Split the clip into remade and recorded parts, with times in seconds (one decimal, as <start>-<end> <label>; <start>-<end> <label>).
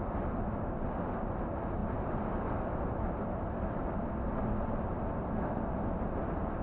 0.0-6.6 recorded